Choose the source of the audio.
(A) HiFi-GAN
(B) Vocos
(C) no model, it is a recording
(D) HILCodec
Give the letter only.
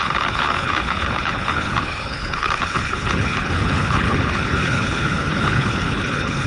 D